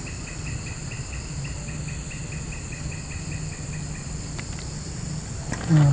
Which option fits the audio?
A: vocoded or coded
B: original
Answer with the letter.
B